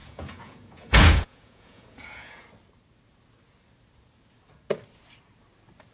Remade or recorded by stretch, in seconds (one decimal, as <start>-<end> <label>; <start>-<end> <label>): 0.0-2.5 remade; 2.5-5.9 recorded